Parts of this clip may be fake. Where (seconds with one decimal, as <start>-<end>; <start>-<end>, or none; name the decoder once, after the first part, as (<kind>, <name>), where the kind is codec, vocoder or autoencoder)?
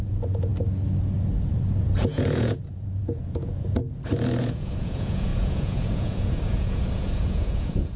0.0-0.5 (vocoder, Vocos); 1.8-3.8; 4.4-8.0